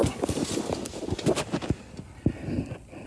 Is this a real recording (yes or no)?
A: yes